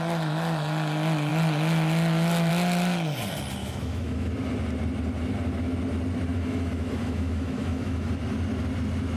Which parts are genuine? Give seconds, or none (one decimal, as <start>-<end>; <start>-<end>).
0.0-3.6; 4.3-6.3; 8.1-9.2